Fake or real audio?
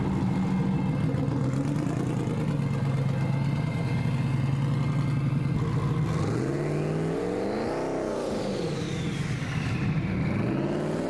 real